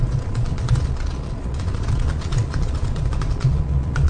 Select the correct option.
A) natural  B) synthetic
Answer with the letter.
B